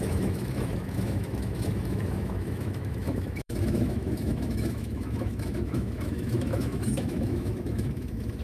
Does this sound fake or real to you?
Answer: fake